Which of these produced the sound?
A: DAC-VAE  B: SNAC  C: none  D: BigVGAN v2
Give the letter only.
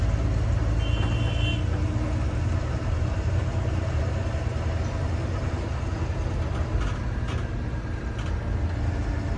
C